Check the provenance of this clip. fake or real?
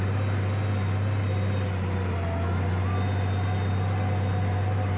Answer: real